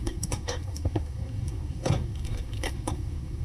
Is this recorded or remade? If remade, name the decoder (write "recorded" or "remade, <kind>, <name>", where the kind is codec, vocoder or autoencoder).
remade, codec, SNAC